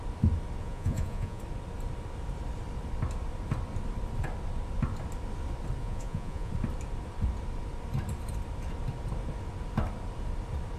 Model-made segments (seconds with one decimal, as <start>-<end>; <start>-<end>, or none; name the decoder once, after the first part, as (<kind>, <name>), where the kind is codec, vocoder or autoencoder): 0.6-1.4 (vocoder, Vocos); 5.8-6.5